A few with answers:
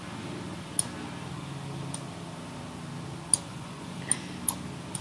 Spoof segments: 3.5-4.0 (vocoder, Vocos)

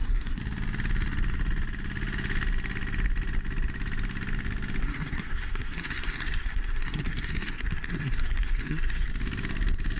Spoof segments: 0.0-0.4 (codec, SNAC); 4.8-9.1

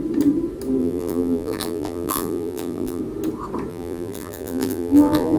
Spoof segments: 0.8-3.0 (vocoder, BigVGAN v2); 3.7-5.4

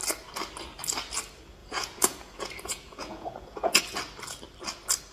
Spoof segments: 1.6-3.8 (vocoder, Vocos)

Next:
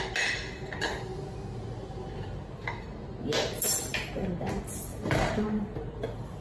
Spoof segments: 4.9-5.9 (vocoder, BigVGAN v2)

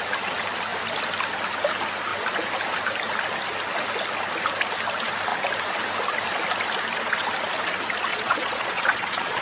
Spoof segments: 8.1-9.4 (vocoder, Vocos)